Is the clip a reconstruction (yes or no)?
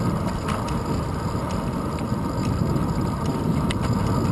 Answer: no